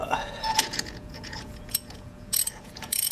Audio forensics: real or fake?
fake